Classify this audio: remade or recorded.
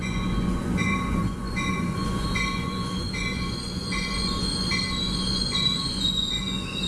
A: remade